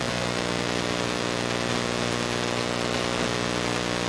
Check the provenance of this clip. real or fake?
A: real